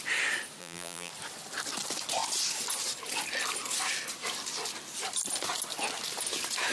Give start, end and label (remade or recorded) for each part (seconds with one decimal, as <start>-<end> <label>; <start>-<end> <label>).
0.0-0.6 recorded; 0.6-1.1 remade; 1.1-6.7 recorded